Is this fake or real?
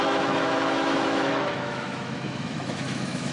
fake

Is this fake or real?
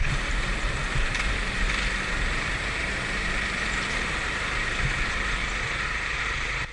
fake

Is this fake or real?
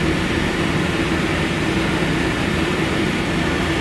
real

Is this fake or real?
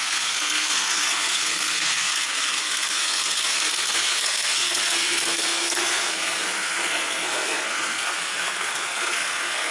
fake